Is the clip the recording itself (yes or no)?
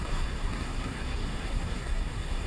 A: no